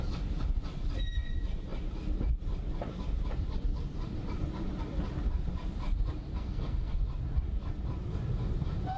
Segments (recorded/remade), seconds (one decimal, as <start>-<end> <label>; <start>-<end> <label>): 0.0-6.3 recorded; 6.3-6.9 remade; 6.9-9.0 recorded